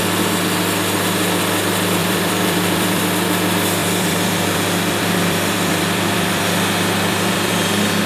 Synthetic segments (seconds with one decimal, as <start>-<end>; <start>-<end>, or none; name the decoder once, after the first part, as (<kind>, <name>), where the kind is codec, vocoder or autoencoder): 2.0-3.0 (vocoder, BigVGAN v2); 3.8-7.5